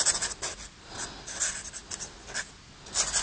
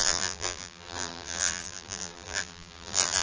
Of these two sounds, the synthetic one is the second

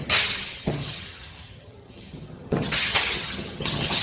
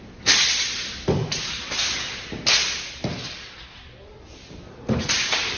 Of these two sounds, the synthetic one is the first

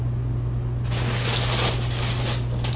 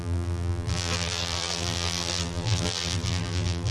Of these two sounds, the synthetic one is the second